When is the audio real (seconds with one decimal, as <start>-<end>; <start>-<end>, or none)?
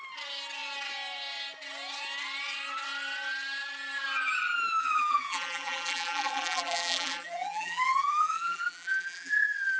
0.0-4.8